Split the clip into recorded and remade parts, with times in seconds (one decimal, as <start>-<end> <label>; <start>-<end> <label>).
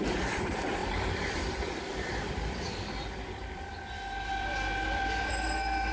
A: 0.0-5.9 remade